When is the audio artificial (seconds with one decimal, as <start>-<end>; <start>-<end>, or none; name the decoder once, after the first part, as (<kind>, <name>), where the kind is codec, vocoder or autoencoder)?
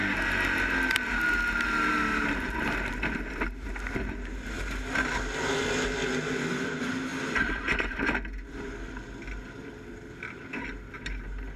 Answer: 7.1-7.9 (vocoder, BigVGAN v2)